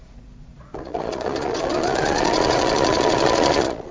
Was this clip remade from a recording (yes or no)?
yes